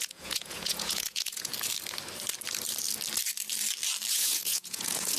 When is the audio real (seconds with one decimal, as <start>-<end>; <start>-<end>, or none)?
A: 1.5-4.1